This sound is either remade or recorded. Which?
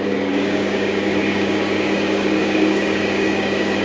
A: remade